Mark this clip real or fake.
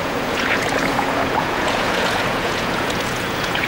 fake